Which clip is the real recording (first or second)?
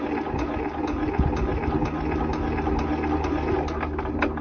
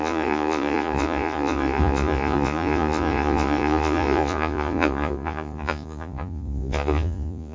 first